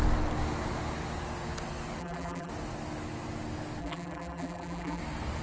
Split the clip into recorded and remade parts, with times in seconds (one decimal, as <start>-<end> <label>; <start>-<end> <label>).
0.0-2.0 recorded; 2.0-2.5 remade; 2.5-3.8 recorded; 3.8-5.0 remade; 5.0-5.4 recorded